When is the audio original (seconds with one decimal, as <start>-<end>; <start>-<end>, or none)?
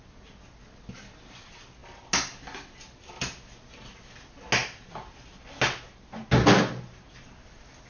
0.0-7.9